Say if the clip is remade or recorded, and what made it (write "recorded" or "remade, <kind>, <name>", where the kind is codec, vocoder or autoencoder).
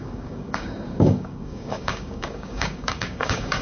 remade, codec, DAC